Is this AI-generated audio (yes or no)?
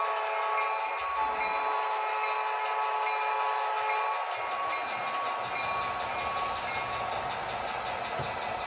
no